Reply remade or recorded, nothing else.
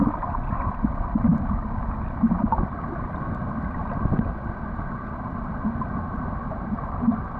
recorded